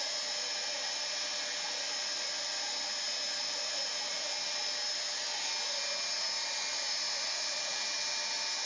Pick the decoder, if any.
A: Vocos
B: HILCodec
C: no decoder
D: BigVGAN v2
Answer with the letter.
C